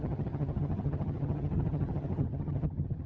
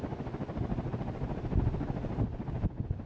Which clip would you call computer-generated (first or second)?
first